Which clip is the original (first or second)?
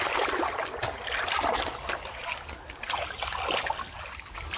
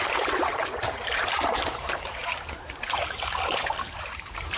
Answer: first